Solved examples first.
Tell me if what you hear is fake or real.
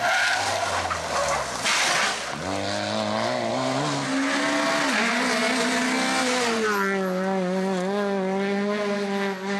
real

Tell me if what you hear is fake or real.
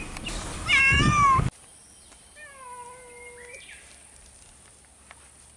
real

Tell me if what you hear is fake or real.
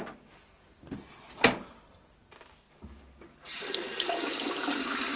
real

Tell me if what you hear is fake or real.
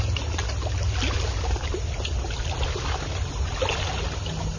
real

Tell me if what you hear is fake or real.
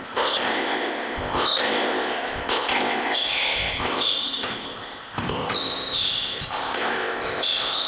fake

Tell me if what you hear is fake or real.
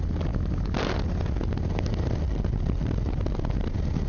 real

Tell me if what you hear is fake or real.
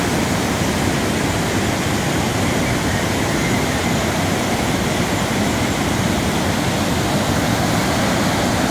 real